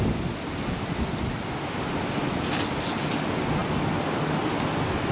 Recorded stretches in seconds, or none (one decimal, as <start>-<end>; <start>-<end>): 0.0-5.1